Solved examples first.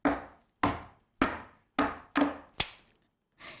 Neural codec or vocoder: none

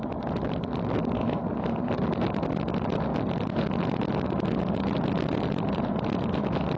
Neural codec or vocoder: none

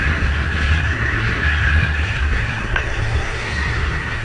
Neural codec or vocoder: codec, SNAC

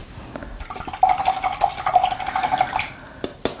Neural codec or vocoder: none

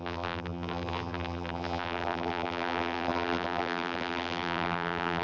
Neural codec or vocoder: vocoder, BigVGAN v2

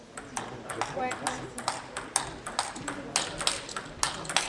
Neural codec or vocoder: none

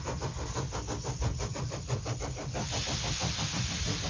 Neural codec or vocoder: none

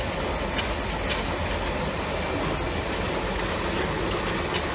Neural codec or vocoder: none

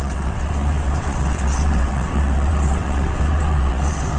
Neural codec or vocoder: vocoder, WaveNeXt